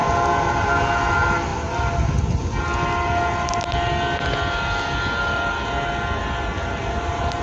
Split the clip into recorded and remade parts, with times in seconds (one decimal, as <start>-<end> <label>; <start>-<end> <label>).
0.0-7.4 recorded

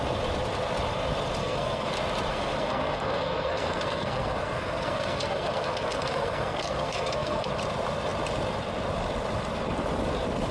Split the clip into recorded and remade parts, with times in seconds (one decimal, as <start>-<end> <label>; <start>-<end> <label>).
0.0-1.4 recorded; 1.4-1.9 remade; 1.9-2.3 recorded; 2.3-7.5 remade; 7.5-10.5 recorded

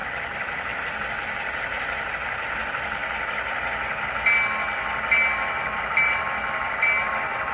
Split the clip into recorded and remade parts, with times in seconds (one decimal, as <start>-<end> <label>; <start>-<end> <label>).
0.0-3.0 remade; 3.0-7.1 recorded; 7.1-7.5 remade

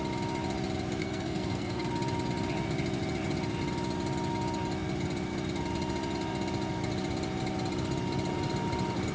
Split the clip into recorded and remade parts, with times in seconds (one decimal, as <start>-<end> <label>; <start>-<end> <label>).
0.0-1.0 recorded; 1.0-1.9 remade; 1.9-9.1 recorded